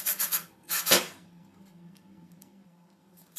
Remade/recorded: remade